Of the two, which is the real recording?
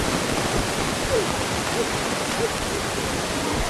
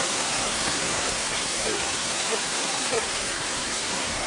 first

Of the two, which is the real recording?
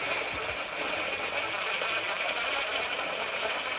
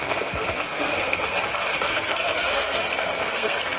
first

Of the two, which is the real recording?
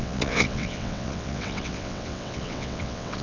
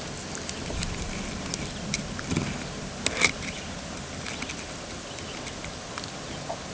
second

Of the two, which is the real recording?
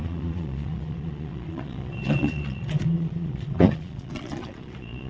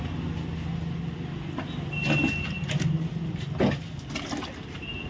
second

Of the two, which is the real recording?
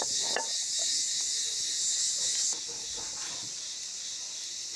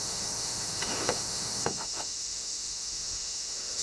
first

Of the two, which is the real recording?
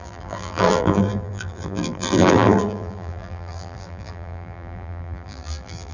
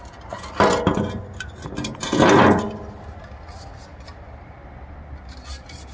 second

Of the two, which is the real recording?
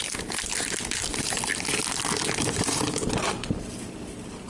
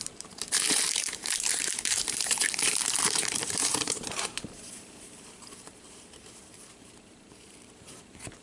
first